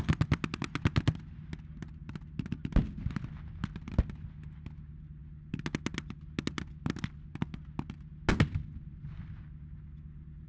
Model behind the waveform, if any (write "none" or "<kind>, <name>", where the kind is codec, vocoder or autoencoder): none